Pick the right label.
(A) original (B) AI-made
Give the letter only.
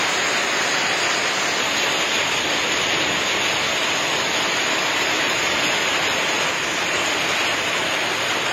A